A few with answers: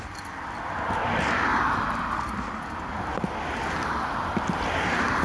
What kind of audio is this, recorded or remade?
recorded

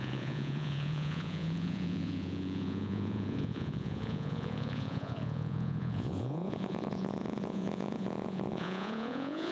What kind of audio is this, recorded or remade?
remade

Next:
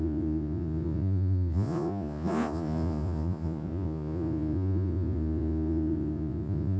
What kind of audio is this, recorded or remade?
remade